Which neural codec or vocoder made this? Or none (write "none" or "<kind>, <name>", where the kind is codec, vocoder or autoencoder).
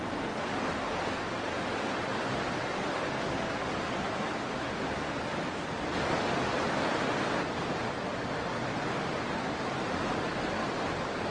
none